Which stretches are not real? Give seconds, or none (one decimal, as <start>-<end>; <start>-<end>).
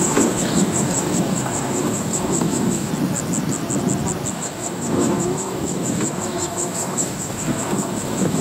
0.0-2.9; 4.3-8.4